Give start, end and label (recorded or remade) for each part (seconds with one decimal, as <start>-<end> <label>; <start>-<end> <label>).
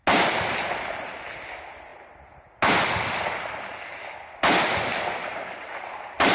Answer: 0.0-5.2 recorded; 5.2-6.3 remade